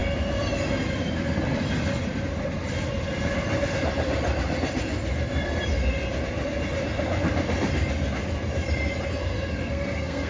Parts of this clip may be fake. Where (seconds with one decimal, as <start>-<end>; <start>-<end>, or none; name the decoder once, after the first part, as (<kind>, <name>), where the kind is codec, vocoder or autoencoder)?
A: 9.6-10.3 (codec, SNAC)